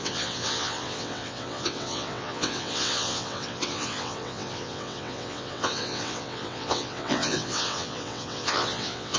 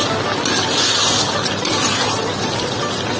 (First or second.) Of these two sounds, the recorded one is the second